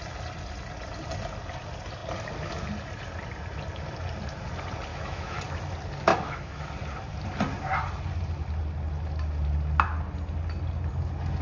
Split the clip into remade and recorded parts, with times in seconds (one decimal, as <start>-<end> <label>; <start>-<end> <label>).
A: 0.0-4.9 recorded; 4.9-5.4 remade; 5.4-6.1 recorded; 6.1-6.7 remade; 6.7-11.4 recorded